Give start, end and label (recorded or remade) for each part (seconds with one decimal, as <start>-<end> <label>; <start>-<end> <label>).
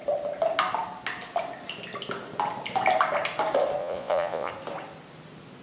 0.0-3.8 recorded; 3.8-4.5 remade; 4.5-5.6 recorded